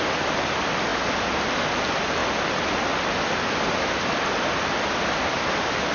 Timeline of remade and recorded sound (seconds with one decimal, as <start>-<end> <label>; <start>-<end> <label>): 0.0-5.9 recorded